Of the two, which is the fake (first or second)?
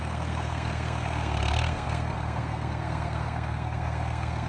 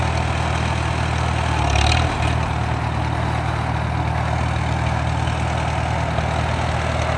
first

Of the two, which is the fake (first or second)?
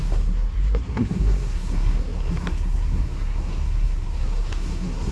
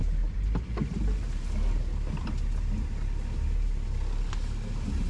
first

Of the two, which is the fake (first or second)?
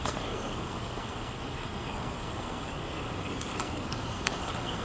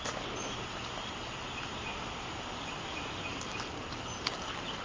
first